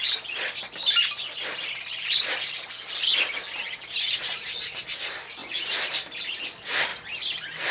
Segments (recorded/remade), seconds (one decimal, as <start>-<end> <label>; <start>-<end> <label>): 0.0-7.7 recorded